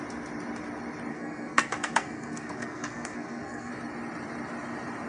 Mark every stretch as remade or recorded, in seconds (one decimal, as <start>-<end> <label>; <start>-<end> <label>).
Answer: 0.0-1.1 recorded; 1.1-3.7 remade; 3.7-5.1 recorded